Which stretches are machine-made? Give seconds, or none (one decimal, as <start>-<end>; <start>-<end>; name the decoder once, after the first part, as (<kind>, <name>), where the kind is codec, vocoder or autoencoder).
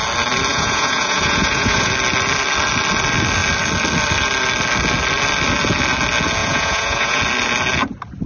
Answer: 0.5-1.9 (vocoder, Vocos); 6.4-7.2